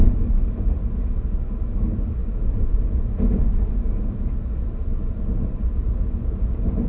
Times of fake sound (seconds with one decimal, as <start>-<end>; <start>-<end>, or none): none